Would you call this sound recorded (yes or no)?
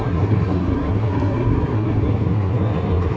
no